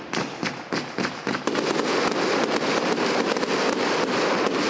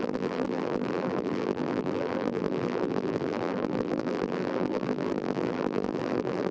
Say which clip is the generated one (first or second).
second